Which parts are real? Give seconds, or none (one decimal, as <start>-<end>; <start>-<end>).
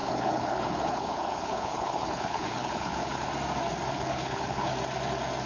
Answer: 3.3-3.9; 4.7-5.5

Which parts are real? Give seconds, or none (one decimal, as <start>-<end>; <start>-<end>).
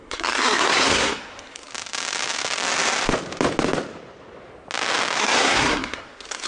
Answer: 1.7-5.2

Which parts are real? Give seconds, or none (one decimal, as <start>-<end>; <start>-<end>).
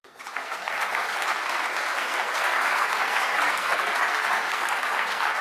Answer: none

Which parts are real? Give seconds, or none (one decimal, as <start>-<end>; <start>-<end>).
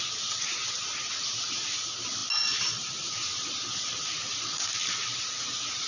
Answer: 0.0-5.9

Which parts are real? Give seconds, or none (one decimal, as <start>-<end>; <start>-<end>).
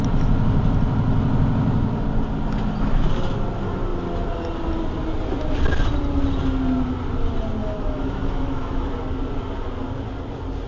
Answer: 0.0-7.6; 8.9-10.7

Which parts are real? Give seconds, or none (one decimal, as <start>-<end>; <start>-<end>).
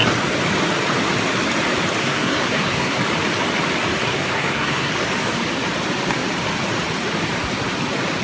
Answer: 0.0-2.0; 3.0-4.0; 4.9-8.2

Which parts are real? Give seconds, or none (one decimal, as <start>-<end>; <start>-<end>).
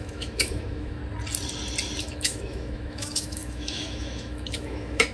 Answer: 1.0-2.0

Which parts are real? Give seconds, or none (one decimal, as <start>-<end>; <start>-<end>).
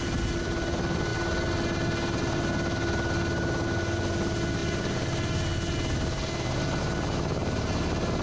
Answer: 0.0-8.2